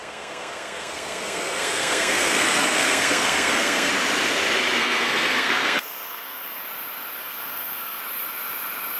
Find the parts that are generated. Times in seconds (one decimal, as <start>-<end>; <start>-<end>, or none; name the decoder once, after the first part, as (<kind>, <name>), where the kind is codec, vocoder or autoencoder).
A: 0.0-3.9 (codec, SNAC); 4.8-6.6; 7.2-8.0